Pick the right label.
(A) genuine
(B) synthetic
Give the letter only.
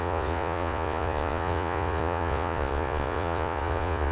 B